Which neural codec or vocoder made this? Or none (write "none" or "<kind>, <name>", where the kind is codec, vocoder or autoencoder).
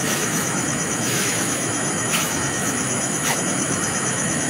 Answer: autoencoder, DAC-VAE